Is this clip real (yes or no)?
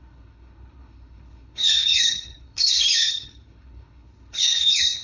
no